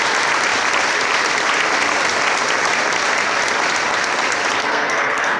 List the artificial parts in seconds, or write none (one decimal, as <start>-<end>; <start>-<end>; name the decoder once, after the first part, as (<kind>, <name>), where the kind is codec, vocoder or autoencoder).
4.6-5.4 (codec, SNAC)